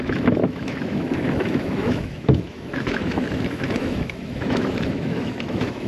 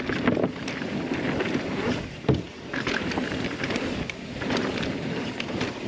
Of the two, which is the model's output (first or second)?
first